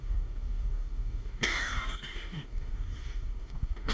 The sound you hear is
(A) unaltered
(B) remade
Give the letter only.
B